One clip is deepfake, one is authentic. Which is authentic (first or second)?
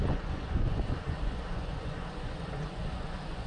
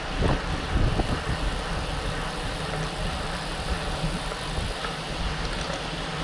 second